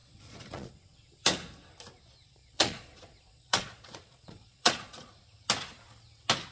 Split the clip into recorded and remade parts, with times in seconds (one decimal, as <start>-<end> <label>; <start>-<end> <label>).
0.0-0.7 remade; 0.7-2.4 recorded; 2.4-5.1 remade; 5.1-6.5 recorded